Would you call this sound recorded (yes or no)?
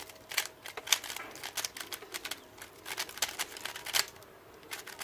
yes